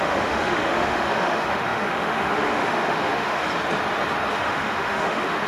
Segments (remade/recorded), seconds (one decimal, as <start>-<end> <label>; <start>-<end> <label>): 0.0-3.4 remade; 3.4-4.3 recorded; 4.3-5.5 remade